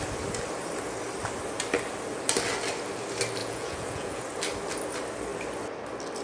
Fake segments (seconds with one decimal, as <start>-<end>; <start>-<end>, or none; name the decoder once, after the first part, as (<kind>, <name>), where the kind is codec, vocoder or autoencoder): 3.4-4.2 (vocoder, Vocos)